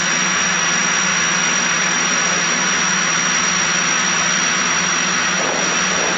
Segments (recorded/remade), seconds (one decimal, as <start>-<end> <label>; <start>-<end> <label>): 0.0-6.2 recorded

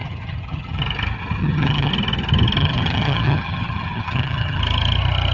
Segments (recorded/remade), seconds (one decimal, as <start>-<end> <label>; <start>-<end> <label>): 0.0-0.8 remade; 0.8-1.4 recorded; 1.4-1.9 remade; 1.9-2.6 recorded; 2.6-4.6 remade; 4.6-5.3 recorded

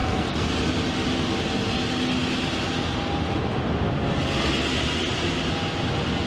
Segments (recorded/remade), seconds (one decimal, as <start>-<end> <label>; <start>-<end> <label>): 0.0-0.5 remade; 0.5-6.3 recorded

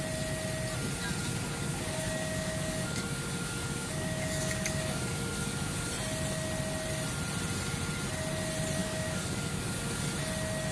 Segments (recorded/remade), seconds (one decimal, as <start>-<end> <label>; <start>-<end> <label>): 0.0-1.2 recorded; 1.2-5.9 remade; 5.9-8.8 recorded; 8.8-10.1 remade; 10.1-10.7 recorded

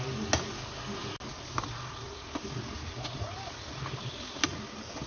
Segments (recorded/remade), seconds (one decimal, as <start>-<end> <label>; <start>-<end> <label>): 0.0-5.1 recorded